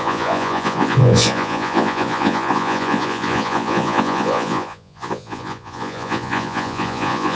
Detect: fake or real fake